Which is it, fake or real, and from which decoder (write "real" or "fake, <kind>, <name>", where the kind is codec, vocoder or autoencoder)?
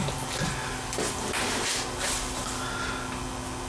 real